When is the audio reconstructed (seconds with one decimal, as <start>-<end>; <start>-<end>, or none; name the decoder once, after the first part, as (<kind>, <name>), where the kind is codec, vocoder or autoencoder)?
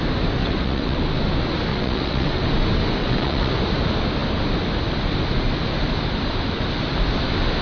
0.4-1.0 (vocoder, WaveNeXt); 1.7-2.4; 3.0-3.5